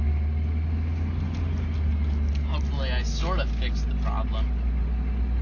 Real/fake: real